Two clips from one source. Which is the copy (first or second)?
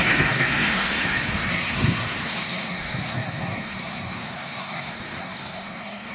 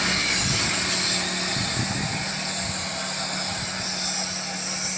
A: first